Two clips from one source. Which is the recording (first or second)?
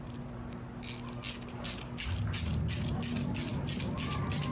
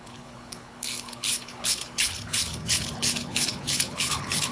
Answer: first